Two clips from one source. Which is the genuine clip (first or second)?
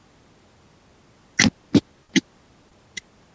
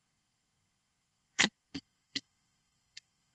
first